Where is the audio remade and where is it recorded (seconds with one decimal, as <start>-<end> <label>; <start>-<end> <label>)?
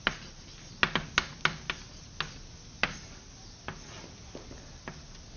0.0-5.4 recorded